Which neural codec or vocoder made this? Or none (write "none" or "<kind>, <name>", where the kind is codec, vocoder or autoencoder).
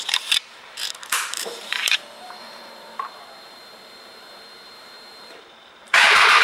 vocoder, BigVGAN v2